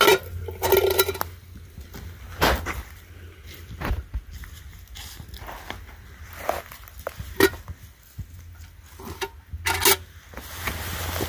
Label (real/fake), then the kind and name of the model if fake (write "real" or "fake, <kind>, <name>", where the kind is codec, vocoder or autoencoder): real